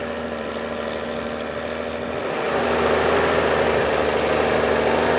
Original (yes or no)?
yes